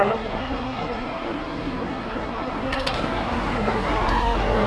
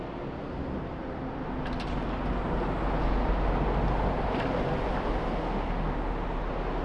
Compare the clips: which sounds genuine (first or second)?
second